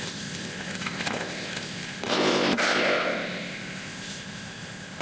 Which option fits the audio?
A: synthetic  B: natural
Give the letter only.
A